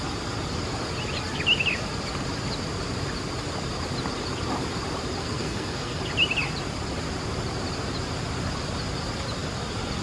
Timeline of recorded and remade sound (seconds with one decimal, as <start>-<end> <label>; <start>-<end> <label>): 0.0-5.2 recorded; 5.2-6.0 remade; 6.0-10.0 recorded